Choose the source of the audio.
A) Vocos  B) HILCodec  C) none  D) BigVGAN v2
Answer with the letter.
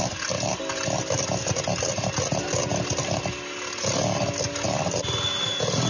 C